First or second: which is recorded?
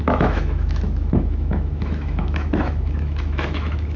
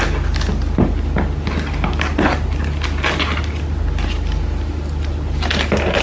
second